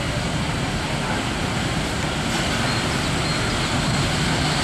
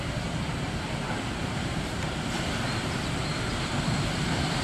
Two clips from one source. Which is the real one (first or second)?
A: first